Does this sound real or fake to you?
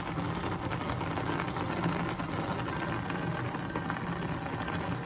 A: real